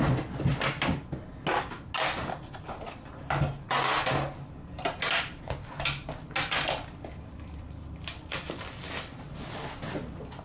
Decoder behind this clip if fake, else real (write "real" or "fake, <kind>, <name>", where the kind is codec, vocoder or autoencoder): real